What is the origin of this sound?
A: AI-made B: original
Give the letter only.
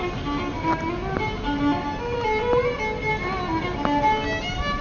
B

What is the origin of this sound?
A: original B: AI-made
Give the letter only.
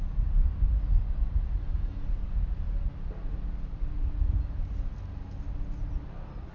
A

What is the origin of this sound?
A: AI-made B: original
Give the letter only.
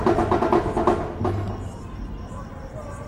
B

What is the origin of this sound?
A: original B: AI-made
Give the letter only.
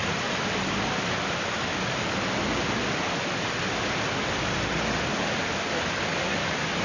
A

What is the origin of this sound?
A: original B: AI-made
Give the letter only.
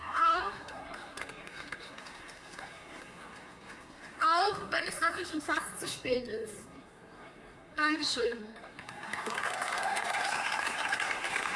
B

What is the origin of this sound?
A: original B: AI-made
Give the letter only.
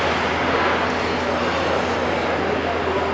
A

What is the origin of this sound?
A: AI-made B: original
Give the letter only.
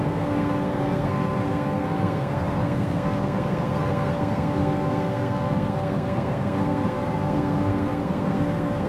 A